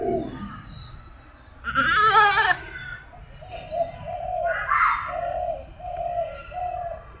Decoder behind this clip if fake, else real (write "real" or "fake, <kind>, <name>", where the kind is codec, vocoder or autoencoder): real